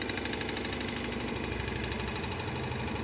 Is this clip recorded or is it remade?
recorded